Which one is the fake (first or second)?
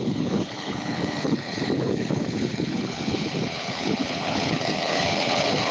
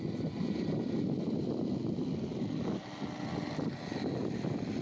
first